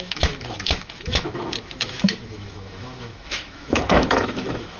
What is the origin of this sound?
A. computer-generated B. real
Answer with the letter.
A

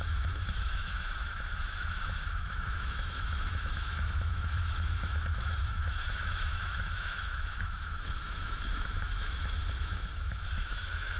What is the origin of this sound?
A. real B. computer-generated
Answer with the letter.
B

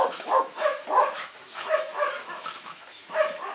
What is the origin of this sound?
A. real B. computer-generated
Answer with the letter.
B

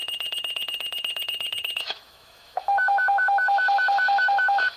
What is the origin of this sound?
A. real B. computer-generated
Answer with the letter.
B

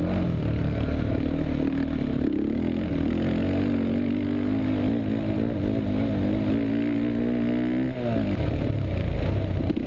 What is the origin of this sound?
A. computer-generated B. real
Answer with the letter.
B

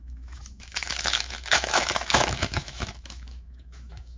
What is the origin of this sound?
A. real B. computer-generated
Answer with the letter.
B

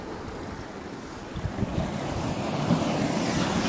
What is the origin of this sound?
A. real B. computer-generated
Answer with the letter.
A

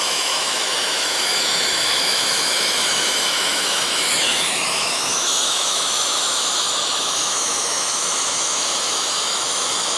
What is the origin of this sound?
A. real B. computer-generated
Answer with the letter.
B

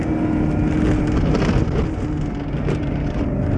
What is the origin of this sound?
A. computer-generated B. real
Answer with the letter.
B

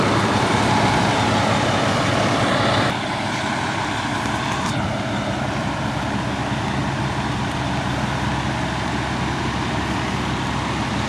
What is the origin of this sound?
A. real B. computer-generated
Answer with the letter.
A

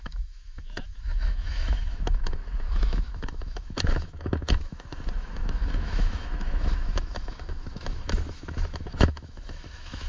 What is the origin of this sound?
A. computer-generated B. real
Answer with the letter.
A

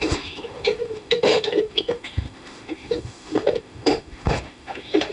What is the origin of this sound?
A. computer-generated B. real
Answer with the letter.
A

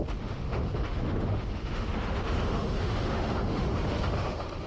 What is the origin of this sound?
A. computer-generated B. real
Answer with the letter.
A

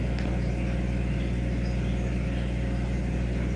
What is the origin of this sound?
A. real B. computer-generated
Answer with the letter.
A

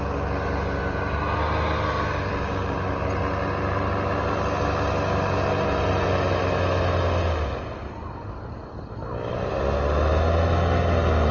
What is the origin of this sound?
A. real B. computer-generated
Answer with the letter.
A